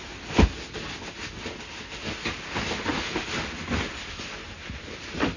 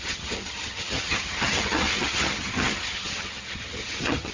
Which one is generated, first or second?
second